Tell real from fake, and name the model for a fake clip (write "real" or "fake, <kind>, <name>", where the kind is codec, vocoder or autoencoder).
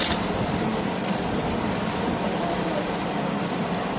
real